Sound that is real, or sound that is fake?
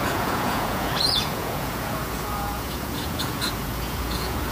fake